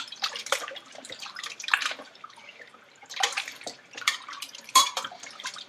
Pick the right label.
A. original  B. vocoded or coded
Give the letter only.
B